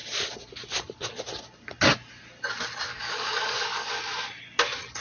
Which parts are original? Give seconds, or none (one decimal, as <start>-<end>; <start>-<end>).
0.0-2.9; 3.9-5.0